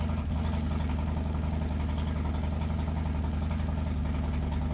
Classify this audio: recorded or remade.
recorded